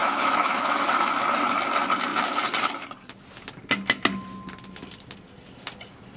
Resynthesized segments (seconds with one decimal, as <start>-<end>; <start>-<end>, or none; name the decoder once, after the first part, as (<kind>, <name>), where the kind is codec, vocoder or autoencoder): 0.0-1.1 (autoencoder, DAC-VAE)